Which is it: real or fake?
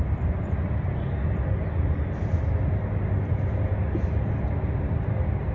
real